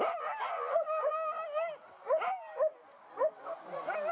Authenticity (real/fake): real